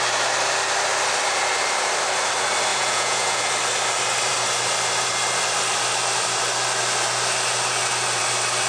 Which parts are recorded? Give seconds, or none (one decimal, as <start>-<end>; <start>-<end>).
0.0-2.7; 3.4-8.7